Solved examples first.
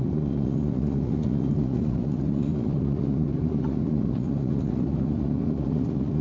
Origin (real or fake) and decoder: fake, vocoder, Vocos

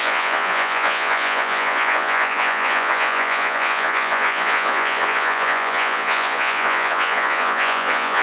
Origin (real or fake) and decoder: fake, vocoder, Vocos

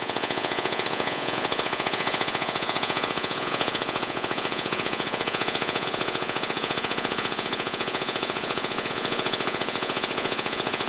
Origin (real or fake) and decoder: fake, vocoder, Vocos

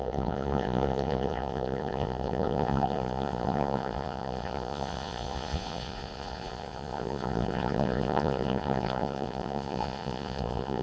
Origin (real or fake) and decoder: fake, vocoder, Vocos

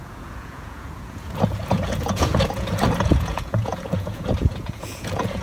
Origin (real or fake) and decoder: fake, vocoder, Vocos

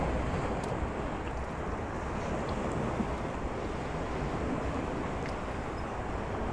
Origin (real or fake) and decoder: real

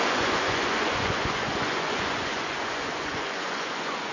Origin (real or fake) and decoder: fake, vocoder, Vocos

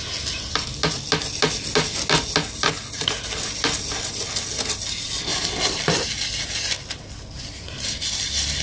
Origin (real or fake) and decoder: real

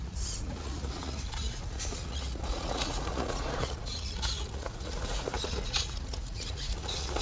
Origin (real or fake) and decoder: fake, vocoder, Vocos